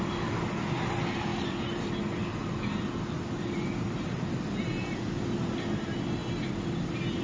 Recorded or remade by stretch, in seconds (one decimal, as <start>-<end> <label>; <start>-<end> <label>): 0.0-7.2 recorded